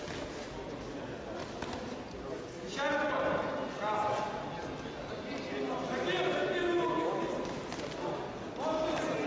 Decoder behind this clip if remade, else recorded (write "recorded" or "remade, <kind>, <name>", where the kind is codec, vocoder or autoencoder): recorded